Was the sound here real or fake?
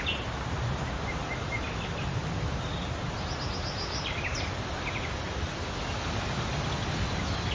real